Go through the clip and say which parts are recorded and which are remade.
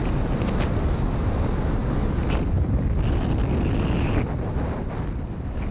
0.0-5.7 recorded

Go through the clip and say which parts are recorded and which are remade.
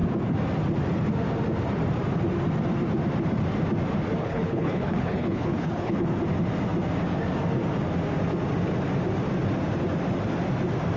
0.0-4.2 recorded; 4.2-6.2 remade; 6.2-11.0 recorded